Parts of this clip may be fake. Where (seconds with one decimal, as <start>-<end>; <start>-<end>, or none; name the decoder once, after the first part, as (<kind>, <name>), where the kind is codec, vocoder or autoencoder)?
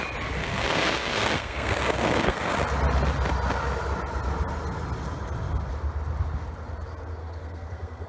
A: 0.4-2.5 (codec, SNAC); 7.2-8.1